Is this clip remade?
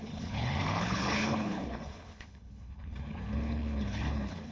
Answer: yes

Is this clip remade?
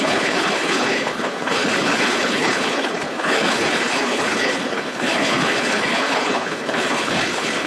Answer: yes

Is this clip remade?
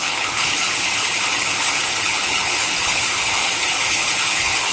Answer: yes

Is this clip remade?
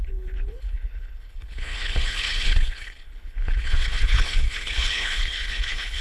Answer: yes